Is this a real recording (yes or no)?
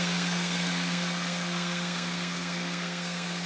no